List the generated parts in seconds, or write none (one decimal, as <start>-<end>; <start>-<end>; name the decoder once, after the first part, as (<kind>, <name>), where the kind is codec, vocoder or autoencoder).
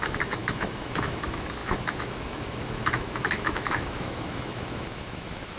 0.0-5.6 (autoencoder, DAC-VAE)